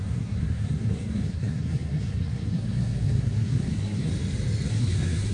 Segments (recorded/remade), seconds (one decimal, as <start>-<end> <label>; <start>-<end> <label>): 0.0-4.1 remade; 4.1-4.7 recorded; 4.7-5.3 remade

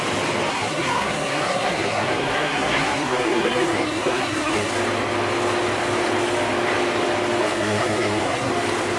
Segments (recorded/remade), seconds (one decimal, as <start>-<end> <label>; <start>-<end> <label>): 0.0-0.5 recorded; 0.5-4.7 remade; 4.7-7.4 recorded; 7.4-8.5 remade; 8.5-9.0 recorded

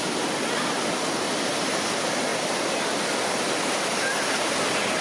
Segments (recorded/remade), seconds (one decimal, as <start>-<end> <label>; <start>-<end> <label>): 0.0-5.0 recorded

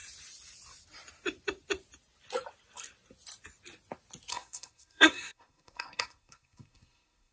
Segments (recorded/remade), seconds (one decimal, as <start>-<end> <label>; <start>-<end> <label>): 0.0-4.3 recorded; 4.3-7.3 remade

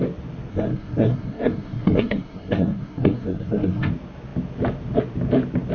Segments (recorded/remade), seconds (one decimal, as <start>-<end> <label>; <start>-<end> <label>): 0.0-0.5 recorded; 0.5-3.9 remade; 3.9-5.7 recorded

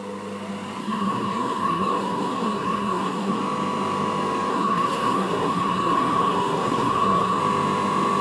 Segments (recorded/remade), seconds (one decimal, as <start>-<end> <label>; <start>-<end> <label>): 0.0-0.8 recorded; 0.8-3.4 remade; 3.4-4.5 recorded; 4.5-7.4 remade; 7.4-8.2 recorded